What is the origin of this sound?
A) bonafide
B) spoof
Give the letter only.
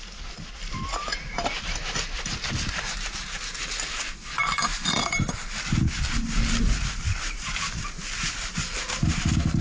A